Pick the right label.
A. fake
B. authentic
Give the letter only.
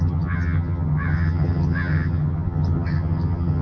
A